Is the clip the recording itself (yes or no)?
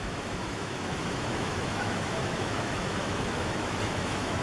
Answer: no